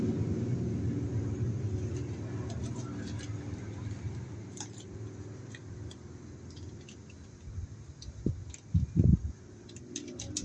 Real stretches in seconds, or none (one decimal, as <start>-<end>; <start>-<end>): 0.0-10.4